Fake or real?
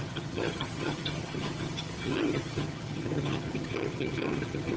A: fake